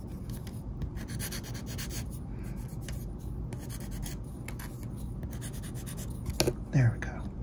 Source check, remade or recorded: recorded